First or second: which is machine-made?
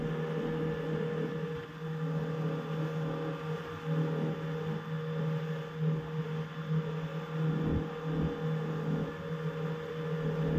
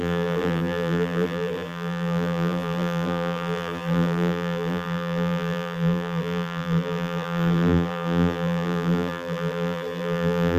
second